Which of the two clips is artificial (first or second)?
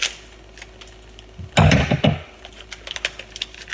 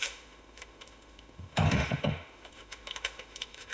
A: second